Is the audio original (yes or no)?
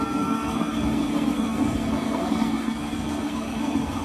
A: no